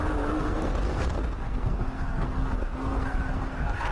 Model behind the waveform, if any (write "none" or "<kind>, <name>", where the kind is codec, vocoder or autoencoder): codec, SNAC